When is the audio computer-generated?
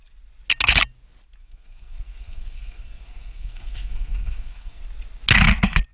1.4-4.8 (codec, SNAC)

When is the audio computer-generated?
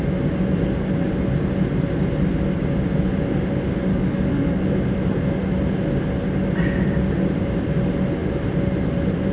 3.9-4.6 (codec, DAC)